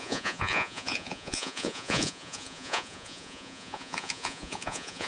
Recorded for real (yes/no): no